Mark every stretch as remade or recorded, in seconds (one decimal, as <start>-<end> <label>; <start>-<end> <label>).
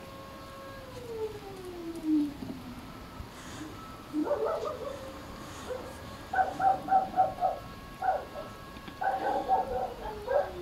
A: 0.0-1.8 recorded; 1.8-2.6 remade; 2.6-4.2 recorded; 4.2-4.7 remade; 4.7-5.2 recorded; 5.2-10.1 remade; 10.1-10.6 recorded